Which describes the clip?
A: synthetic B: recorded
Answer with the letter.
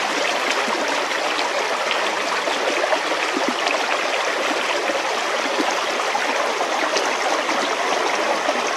B